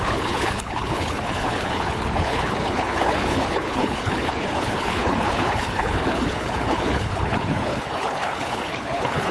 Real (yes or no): no